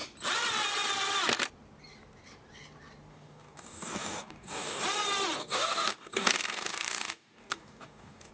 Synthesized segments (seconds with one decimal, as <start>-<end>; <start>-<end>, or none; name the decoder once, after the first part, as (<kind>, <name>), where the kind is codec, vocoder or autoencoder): 3.1-4.8 (codec, DAC); 5.4-8.3